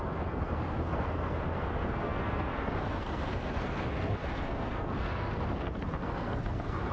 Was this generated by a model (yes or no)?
yes